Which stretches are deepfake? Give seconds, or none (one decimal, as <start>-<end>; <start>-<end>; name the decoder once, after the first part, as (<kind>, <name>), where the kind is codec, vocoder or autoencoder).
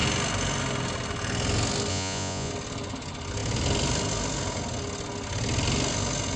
1.9-2.5 (vocoder, Vocos)